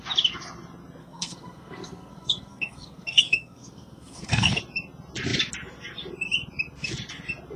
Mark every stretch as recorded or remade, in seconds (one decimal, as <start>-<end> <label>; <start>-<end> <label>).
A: 0.0-1.0 recorded; 1.0-4.6 remade; 4.6-7.6 recorded